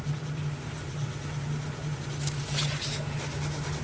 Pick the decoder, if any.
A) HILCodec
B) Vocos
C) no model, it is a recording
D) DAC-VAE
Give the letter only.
C